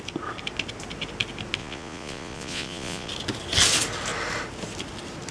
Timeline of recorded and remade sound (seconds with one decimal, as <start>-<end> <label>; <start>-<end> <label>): 0.0-1.6 recorded; 1.6-3.1 remade; 3.1-5.3 recorded